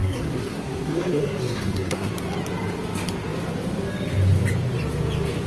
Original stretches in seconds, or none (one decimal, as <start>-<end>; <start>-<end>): 2.1-5.5